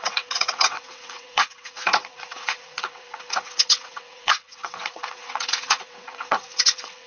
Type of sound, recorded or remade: remade